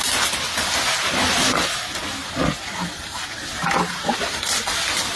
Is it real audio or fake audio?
real